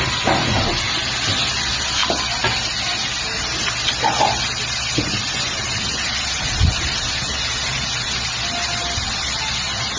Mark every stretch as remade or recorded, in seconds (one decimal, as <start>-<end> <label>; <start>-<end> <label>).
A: 0.0-10.0 recorded